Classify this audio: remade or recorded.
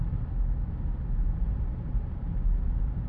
recorded